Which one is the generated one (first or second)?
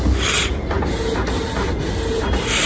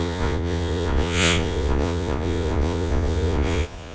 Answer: second